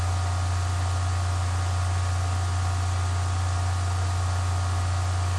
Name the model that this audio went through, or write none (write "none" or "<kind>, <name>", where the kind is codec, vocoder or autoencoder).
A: none